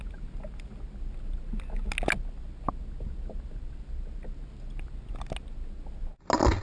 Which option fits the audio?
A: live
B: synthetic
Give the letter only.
A